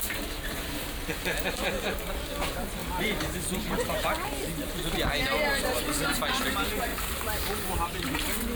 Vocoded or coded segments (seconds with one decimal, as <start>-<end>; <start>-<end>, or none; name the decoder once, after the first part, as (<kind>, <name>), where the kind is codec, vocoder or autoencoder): 2.8-3.4 (vocoder, BigVGAN v2); 6.9-7.7